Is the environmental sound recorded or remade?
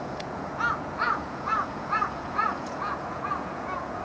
remade